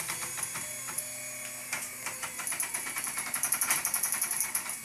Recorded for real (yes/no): yes